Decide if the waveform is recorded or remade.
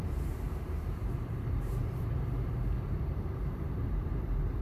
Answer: remade